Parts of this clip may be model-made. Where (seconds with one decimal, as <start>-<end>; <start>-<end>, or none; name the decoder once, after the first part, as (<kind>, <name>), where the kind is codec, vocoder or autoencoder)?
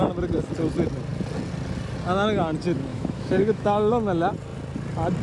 2.9-3.9 (autoencoder, DAC-VAE)